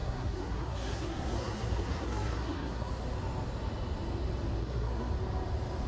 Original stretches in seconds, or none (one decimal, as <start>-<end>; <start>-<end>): 2.9-4.6; 5.1-5.9